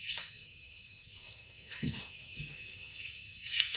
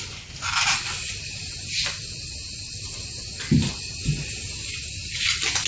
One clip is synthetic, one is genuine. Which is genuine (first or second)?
second